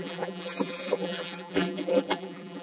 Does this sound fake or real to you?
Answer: fake